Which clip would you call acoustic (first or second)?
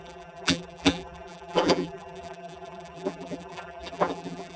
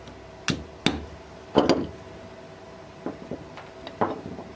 second